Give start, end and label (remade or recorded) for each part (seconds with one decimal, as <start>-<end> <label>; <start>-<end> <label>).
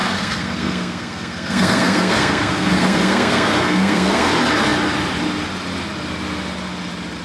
0.0-4.3 remade; 4.3-7.2 recorded